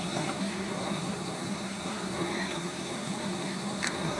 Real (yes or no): no